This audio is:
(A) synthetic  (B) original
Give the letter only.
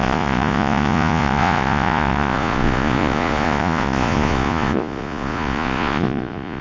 A